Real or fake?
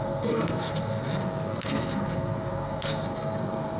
fake